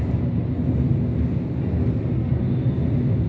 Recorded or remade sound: recorded